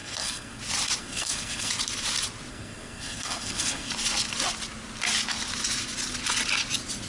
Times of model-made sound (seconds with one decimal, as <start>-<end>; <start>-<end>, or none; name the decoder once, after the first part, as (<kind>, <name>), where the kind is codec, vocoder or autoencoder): 0.0-0.6 (codec, SNAC); 1.0-1.7; 2.5-3.9